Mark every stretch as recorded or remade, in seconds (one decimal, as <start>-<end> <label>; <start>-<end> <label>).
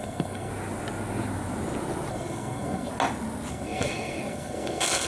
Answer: 0.0-0.5 remade; 0.5-2.1 recorded; 2.1-2.9 remade; 2.9-3.5 recorded; 3.5-5.1 remade